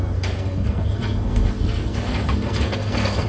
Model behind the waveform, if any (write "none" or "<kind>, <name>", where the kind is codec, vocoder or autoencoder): codec, SNAC